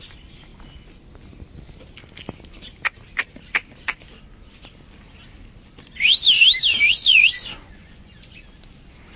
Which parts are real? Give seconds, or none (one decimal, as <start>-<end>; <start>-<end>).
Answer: 0.0-6.9; 8.4-9.2